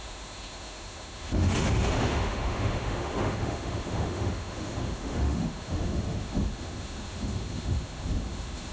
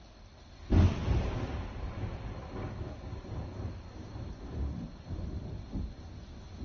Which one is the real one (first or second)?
second